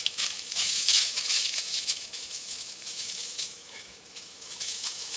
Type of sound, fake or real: fake